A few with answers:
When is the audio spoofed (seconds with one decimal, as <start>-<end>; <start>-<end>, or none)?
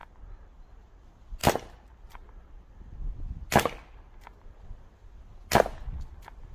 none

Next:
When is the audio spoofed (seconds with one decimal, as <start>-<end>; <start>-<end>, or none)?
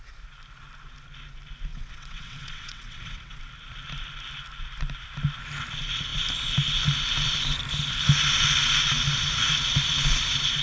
1.7-3.4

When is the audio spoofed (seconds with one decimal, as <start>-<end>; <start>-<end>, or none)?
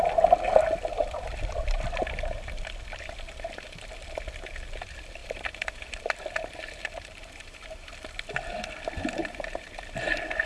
5.2-6.0; 6.8-7.9; 9.2-9.8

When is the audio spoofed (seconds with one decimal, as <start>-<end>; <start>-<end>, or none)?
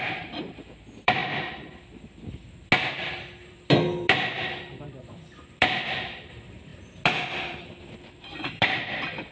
0.0-1.2; 2.9-9.3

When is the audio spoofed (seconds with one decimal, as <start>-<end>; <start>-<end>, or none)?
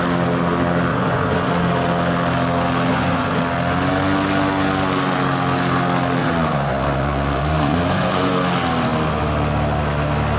0.9-1.5; 2.9-3.4; 6.2-8.3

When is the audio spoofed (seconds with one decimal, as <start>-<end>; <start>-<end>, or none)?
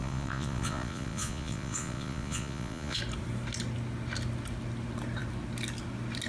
0.0-3.0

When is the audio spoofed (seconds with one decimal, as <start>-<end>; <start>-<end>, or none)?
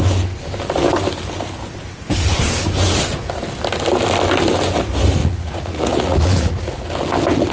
5.2-6.9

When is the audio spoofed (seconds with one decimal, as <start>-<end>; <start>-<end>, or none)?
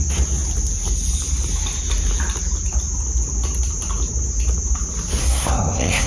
5.2-6.1